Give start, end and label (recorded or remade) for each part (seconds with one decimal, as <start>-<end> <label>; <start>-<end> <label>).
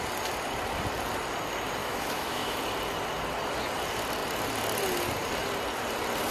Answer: 0.0-1.8 recorded; 1.8-2.6 remade; 2.6-6.3 recorded